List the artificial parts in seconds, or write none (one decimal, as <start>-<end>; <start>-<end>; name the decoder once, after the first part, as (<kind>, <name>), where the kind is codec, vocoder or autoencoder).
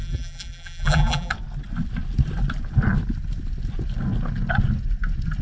0.0-1.3 (vocoder, BigVGAN v2)